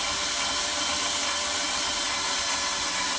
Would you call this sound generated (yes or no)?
no